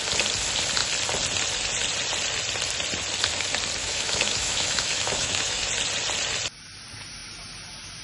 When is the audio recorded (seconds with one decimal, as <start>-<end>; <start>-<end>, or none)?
0.0-3.8; 5.7-8.0